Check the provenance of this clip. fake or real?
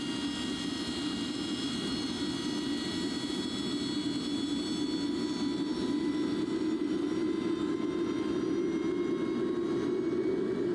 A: real